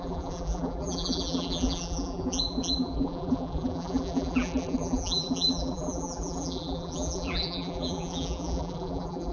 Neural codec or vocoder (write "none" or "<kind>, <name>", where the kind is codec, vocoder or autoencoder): vocoder, BigVGAN v2